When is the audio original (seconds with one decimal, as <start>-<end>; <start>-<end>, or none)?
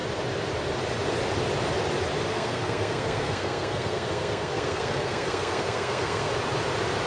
0.0-2.3; 6.3-7.1